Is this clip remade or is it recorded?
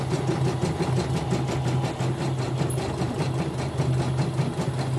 recorded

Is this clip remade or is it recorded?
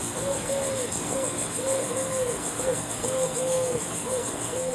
remade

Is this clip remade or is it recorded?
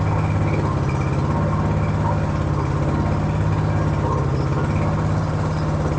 recorded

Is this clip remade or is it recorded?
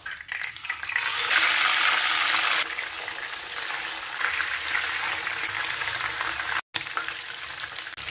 recorded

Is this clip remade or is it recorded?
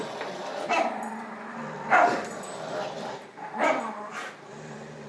remade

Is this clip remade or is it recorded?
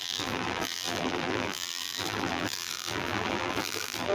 remade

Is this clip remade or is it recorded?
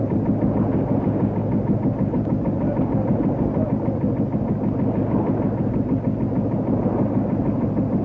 recorded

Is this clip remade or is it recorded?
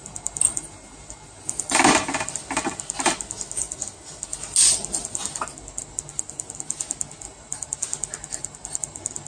recorded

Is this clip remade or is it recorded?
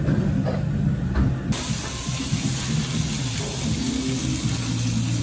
recorded